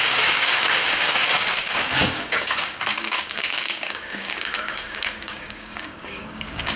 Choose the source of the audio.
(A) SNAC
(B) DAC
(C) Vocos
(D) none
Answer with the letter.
B